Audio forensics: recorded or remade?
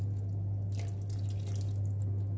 recorded